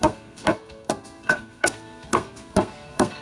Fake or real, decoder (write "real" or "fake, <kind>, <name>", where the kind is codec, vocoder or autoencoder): fake, codec, SNAC